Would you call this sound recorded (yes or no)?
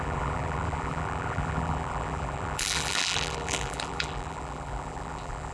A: no